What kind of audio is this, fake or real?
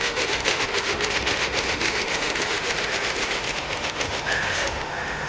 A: fake